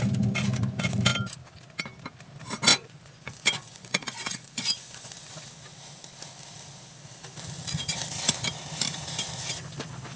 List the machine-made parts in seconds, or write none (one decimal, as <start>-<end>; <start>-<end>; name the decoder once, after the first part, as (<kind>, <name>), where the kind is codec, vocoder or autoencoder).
2.7-5.3 (vocoder, Vocos)